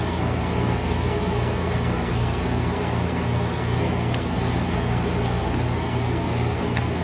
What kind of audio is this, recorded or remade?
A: remade